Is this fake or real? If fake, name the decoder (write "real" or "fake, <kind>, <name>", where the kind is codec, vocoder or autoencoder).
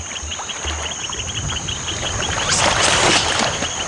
real